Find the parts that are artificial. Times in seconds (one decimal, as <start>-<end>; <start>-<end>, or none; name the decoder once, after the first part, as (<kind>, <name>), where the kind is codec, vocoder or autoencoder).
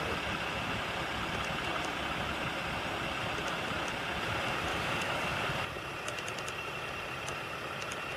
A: 4.7-5.4 (codec, DAC)